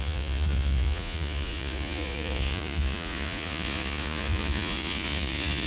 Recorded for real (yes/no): no